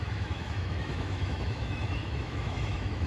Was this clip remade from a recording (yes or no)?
yes